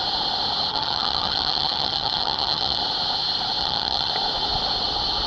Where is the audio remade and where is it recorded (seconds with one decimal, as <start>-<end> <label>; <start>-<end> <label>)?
0.0-0.7 recorded; 0.7-2.8 remade; 2.8-3.6 recorded; 3.6-4.1 remade; 4.1-5.3 recorded